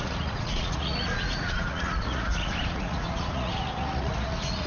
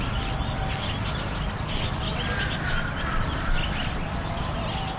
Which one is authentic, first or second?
second